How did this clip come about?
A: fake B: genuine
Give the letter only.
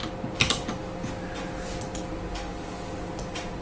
B